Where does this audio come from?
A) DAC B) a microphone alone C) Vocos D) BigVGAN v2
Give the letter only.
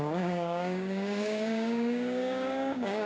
A